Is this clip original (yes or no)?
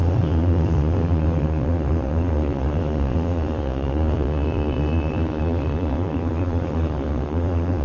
no